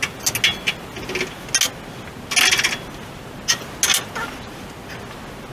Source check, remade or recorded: recorded